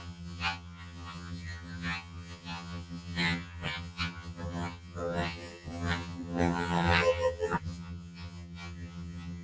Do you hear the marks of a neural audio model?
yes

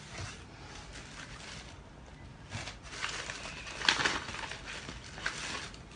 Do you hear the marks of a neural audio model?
no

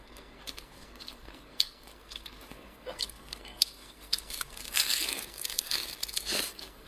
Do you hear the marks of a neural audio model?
yes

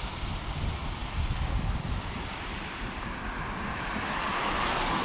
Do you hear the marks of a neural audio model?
yes